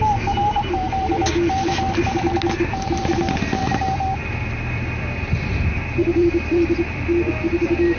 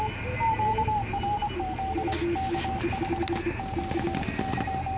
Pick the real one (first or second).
second